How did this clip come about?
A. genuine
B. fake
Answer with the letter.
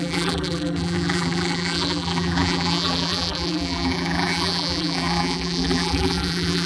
B